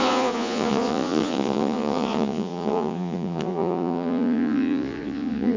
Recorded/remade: remade